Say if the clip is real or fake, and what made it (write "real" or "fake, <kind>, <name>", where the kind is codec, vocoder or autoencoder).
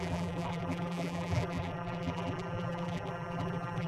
fake, vocoder, BigVGAN v2